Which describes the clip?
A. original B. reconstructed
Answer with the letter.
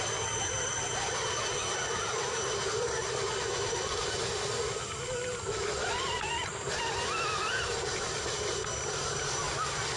B